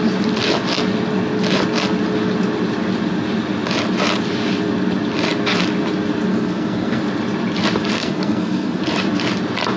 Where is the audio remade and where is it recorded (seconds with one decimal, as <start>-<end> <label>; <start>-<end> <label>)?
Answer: 0.0-6.3 recorded; 6.3-7.0 remade; 7.0-8.0 recorded; 8.0-8.8 remade; 8.8-9.8 recorded